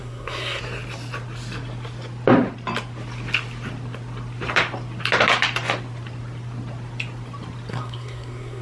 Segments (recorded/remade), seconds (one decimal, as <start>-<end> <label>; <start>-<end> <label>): 0.0-0.6 remade; 0.6-7.7 recorded; 7.7-8.6 remade